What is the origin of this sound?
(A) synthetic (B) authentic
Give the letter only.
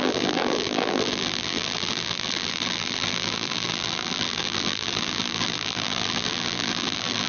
A